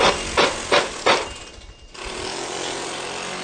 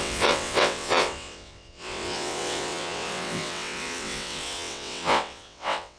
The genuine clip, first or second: first